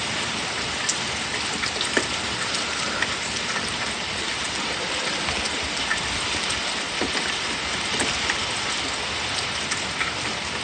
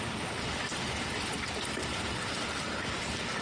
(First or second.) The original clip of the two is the first